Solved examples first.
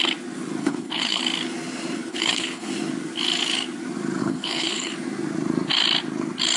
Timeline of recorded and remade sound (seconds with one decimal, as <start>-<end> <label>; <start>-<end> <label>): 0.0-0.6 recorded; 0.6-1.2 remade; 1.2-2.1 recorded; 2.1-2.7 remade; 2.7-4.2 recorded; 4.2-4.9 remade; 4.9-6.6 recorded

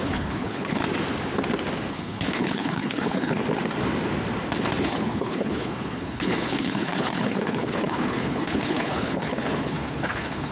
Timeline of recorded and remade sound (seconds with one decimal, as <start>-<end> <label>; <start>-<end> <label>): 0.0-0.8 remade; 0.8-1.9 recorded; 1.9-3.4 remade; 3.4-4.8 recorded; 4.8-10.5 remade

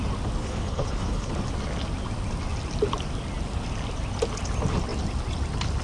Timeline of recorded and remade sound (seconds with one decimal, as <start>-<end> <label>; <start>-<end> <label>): 0.0-0.4 recorded; 0.4-1.3 remade; 1.3-5.8 recorded